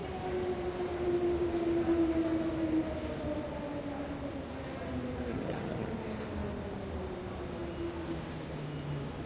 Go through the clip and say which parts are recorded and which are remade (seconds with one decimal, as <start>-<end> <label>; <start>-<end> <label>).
0.0-5.3 recorded; 5.3-5.9 remade; 5.9-9.3 recorded